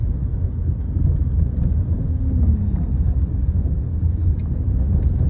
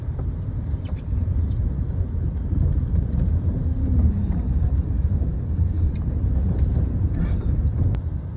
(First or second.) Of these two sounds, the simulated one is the second